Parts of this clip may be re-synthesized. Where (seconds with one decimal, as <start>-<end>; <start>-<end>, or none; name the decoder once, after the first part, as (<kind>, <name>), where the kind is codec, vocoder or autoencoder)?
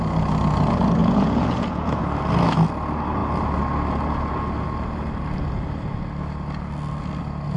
1.0-2.0 (vocoder, Vocos)